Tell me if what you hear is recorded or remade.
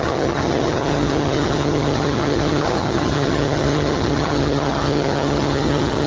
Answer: remade